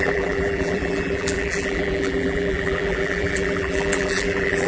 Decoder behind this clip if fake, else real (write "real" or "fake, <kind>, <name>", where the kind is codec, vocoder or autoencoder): fake, vocoder, BigVGAN v2